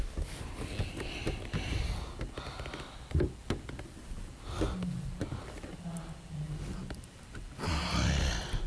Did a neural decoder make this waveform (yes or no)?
no